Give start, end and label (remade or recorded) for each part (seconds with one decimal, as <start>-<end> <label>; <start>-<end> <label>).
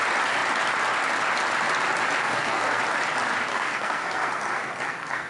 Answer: 0.0-2.2 recorded; 2.2-2.8 remade; 2.8-3.5 recorded; 3.5-5.3 remade